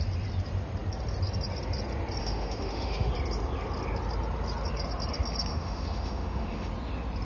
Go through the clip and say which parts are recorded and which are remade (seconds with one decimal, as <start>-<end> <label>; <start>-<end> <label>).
0.0-2.2 recorded; 2.2-3.1 remade; 3.1-5.5 recorded; 5.5-6.7 remade; 6.7-7.2 recorded

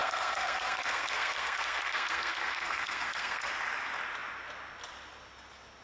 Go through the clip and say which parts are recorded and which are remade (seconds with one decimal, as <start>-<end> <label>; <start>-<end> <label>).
0.0-3.5 remade; 3.5-5.8 recorded

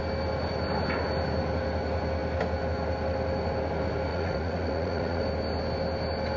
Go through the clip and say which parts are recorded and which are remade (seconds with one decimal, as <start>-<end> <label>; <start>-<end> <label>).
0.0-4.1 recorded; 4.1-5.2 remade; 5.2-6.4 recorded